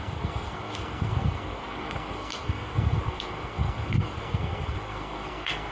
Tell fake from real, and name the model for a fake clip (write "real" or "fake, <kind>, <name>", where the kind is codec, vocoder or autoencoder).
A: fake, codec, SNAC